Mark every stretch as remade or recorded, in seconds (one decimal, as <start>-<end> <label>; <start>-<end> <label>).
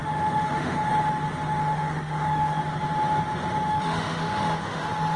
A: 0.0-0.9 remade; 0.9-1.6 recorded; 1.6-2.6 remade; 2.6-3.7 recorded; 3.7-4.8 remade; 4.8-5.2 recorded